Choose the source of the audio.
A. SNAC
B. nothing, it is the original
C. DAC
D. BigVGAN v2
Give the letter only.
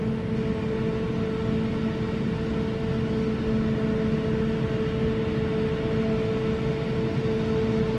B